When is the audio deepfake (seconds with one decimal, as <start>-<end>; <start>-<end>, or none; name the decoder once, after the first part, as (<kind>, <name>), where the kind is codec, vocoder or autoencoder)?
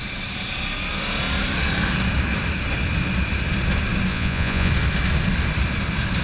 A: 4.1-4.7 (vocoder, Vocos)